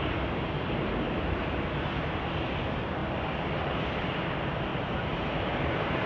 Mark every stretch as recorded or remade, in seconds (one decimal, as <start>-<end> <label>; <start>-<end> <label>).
0.0-4.7 recorded; 4.7-6.1 remade